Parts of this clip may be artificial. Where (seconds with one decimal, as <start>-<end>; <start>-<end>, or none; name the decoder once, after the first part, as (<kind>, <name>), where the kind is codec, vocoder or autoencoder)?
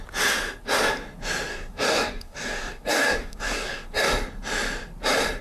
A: 1.5-4.1 (codec, DAC)